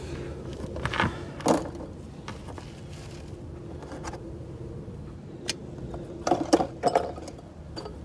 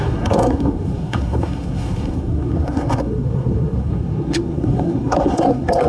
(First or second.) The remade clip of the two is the second